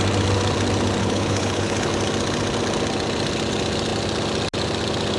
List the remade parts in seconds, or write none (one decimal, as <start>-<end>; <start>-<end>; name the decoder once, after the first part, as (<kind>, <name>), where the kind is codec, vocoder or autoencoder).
1.0-1.9 (codec, HILCodec)